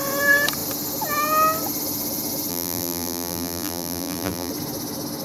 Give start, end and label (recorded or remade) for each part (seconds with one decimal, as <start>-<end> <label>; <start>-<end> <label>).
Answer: 0.0-2.5 recorded; 2.5-4.5 remade; 4.5-5.2 recorded